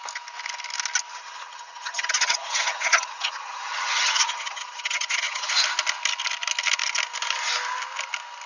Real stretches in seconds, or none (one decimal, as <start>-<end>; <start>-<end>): 0.0-1.1; 5.5-8.5